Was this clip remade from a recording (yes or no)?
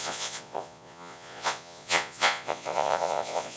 yes